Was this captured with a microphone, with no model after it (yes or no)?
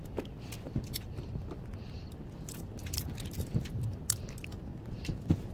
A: yes